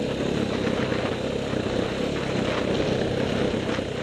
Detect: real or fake real